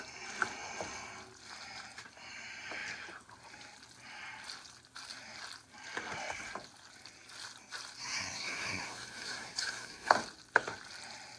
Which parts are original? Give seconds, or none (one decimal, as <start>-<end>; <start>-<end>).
0.0-8.0; 10.1-11.4